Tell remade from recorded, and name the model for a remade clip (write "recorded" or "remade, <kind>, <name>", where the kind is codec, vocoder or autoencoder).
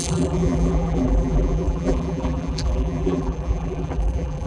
remade, vocoder, BigVGAN v2